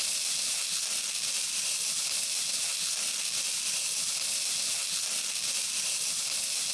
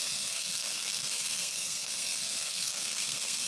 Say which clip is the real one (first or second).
first